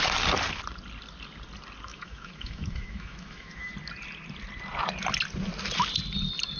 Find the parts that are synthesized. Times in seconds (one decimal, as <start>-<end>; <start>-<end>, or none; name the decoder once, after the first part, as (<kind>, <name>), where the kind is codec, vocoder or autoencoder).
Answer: 1.9-3.7 (autoencoder, DAC-VAE)